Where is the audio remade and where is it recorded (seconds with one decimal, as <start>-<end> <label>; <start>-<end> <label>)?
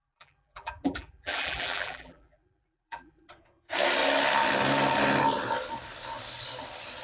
0.0-3.3 remade; 3.3-7.0 recorded